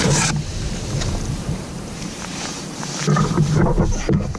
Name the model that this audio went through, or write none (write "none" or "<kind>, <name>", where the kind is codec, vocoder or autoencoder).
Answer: vocoder, BigVGAN v2